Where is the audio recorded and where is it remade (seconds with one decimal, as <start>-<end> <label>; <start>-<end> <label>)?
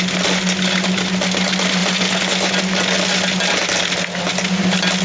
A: 0.0-5.0 recorded